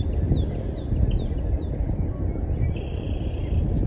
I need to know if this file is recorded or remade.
recorded